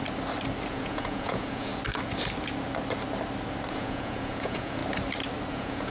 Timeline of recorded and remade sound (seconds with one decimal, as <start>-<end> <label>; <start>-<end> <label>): 0.0-0.7 recorded; 0.7-1.7 remade; 1.7-3.7 recorded; 3.7-4.8 remade; 4.8-5.5 recorded; 5.5-5.9 remade